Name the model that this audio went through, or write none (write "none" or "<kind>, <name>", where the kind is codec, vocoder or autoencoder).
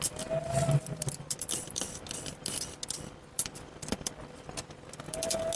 none